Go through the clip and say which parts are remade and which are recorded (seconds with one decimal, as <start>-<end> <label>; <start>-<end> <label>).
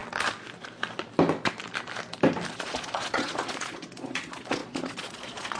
0.0-2.5 recorded; 2.5-5.6 remade